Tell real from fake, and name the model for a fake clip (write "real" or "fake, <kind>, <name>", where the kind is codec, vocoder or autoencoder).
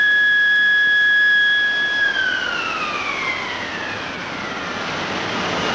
real